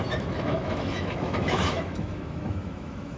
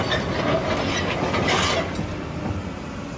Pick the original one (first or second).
second